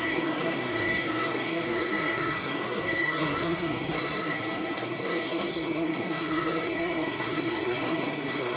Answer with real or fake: fake